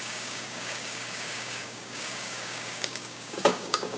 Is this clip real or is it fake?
fake